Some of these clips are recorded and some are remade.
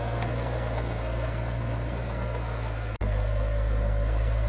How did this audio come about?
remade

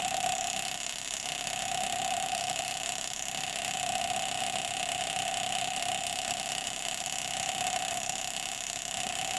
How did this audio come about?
remade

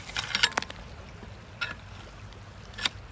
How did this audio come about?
recorded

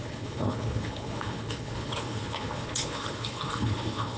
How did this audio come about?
remade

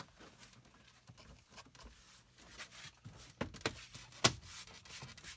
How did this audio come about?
recorded